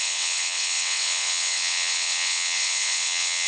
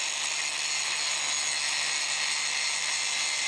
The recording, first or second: second